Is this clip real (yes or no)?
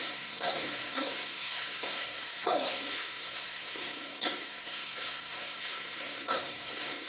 no